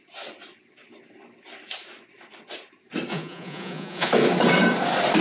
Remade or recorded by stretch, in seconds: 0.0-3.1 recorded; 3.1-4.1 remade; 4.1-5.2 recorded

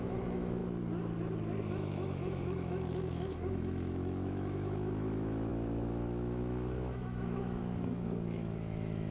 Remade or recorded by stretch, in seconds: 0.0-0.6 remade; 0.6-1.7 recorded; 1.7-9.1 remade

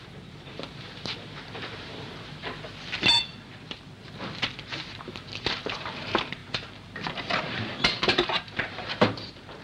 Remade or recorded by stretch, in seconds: 0.0-2.4 remade; 2.4-4.7 recorded; 4.7-9.6 remade

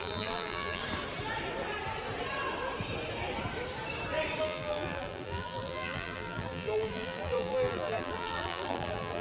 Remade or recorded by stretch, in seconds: 0.0-0.8 remade; 0.8-4.4 recorded; 4.4-9.2 remade

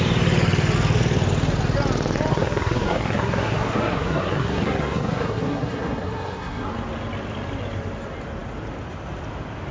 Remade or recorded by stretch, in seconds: 0.0-2.3 recorded; 2.3-6.7 remade; 6.7-9.7 recorded

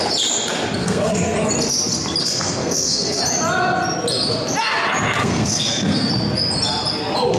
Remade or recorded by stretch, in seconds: 0.0-0.8 recorded; 0.8-1.5 remade; 1.5-2.2 recorded; 2.2-3.2 remade; 3.2-5.2 recorded; 5.2-6.1 remade; 6.1-7.4 recorded